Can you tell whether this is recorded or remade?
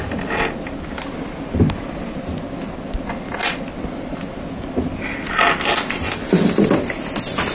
recorded